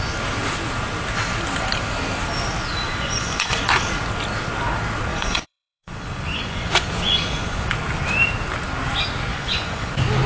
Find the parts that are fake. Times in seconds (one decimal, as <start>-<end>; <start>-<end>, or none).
2.7-3.6; 5.1-7.7; 9.3-9.9